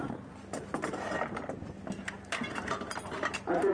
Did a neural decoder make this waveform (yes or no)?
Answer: yes